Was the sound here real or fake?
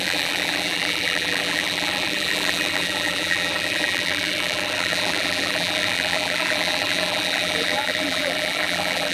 fake